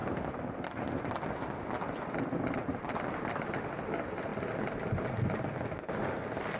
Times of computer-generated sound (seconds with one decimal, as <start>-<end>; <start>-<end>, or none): 0.0-3.7